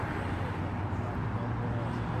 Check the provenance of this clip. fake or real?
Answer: real